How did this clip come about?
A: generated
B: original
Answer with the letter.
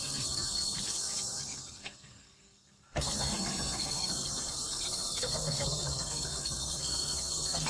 A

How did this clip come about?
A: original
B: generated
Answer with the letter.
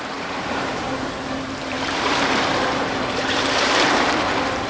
B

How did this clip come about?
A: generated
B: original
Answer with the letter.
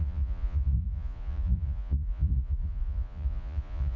A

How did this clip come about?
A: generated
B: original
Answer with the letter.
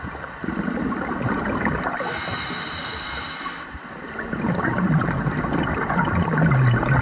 B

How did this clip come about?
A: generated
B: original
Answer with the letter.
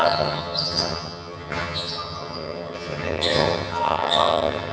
A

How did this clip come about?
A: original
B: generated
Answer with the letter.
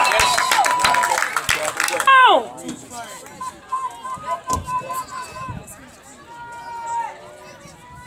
A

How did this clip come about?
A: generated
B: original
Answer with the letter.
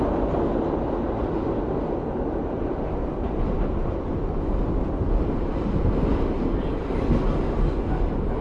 B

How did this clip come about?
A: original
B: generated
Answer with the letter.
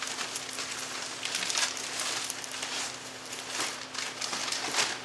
A